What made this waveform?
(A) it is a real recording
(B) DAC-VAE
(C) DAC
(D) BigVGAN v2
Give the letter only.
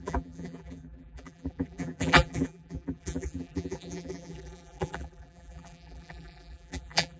D